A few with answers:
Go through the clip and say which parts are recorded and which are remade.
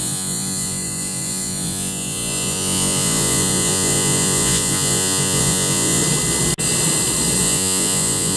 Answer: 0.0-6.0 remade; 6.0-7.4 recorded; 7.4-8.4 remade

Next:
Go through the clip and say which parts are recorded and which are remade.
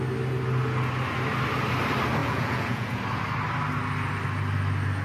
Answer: 0.0-2.2 recorded; 2.2-3.0 remade; 3.0-5.0 recorded